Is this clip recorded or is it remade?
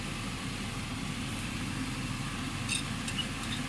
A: remade